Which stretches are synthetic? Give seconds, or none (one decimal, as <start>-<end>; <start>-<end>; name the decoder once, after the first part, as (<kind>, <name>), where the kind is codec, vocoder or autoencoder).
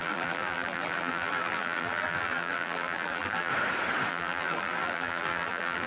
0.0-3.5 (vocoder, BigVGAN v2); 4.1-5.9